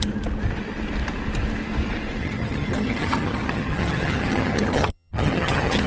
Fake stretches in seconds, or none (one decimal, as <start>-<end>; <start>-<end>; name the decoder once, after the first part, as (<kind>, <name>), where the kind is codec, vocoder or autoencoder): 2.2-5.9 (vocoder, HiFi-GAN)